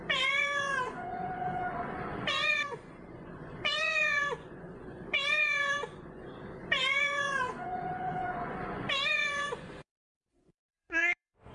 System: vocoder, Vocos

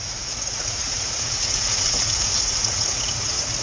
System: vocoder, Vocos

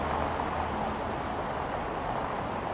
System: none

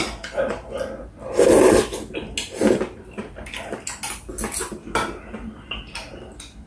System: none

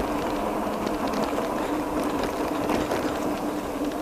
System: none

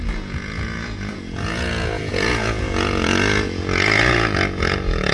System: vocoder, Vocos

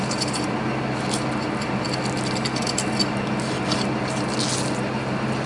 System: none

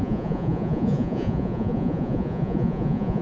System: vocoder, Vocos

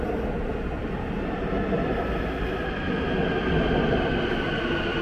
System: none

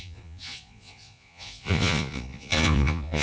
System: vocoder, Vocos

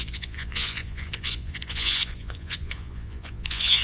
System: vocoder, Vocos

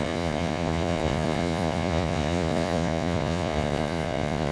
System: vocoder, Vocos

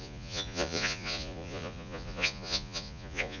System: vocoder, Vocos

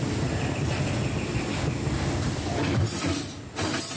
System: none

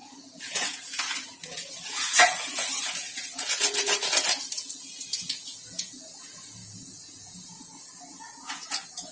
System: vocoder, Vocos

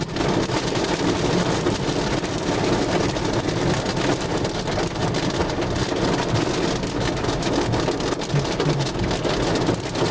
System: none